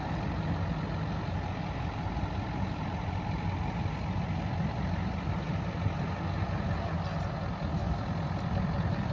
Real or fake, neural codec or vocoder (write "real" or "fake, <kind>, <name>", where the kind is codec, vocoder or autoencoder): real